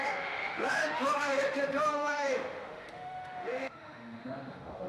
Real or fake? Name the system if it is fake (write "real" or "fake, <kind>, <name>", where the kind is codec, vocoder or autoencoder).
fake, autoencoder, DAC-VAE